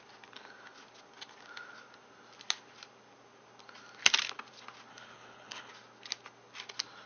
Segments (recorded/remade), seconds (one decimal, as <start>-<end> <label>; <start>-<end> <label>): 0.0-4.9 recorded; 4.9-5.7 remade; 5.7-7.1 recorded